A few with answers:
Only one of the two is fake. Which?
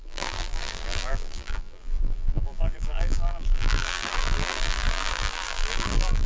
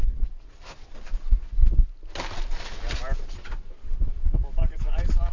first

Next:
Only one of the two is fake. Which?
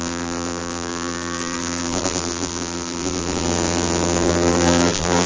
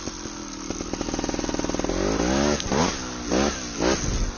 first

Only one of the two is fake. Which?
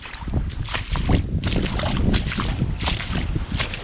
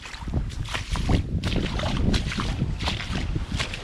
second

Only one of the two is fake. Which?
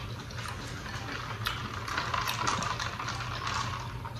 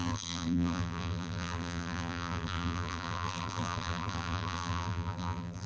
second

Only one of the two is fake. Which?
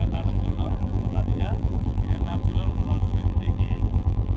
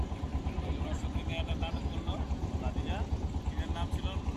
first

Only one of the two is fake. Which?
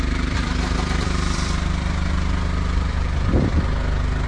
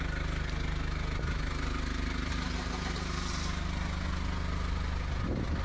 first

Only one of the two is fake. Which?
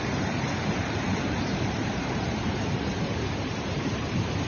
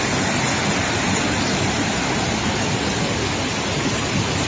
first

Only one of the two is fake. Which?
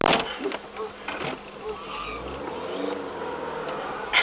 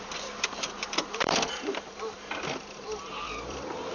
second